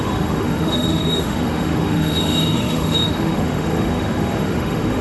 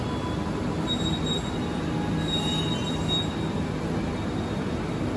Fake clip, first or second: first